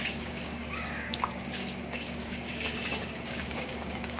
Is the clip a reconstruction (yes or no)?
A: yes